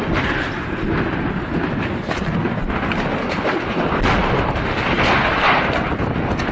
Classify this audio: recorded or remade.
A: recorded